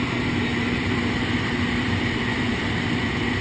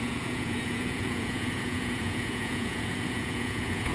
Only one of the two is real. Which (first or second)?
first